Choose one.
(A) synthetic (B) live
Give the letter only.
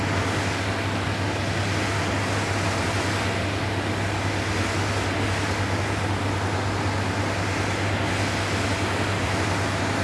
B